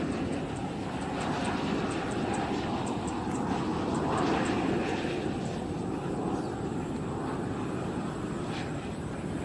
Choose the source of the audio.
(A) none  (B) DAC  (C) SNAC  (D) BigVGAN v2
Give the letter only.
A